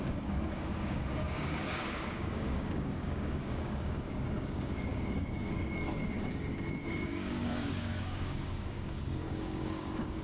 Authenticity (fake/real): fake